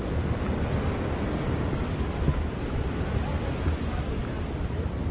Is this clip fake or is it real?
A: real